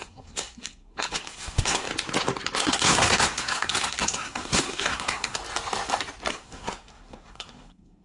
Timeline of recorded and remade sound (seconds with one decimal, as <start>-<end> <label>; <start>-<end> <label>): 0.0-1.9 remade; 1.9-2.6 recorded; 2.6-5.4 remade; 5.4-6.3 recorded; 6.3-8.0 remade